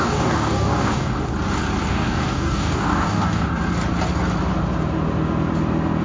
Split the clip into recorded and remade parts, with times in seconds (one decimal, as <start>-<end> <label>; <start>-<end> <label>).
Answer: 0.0-1.3 remade; 1.3-1.9 recorded; 1.9-3.5 remade; 3.5-6.0 recorded